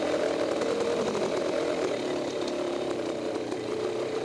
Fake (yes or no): no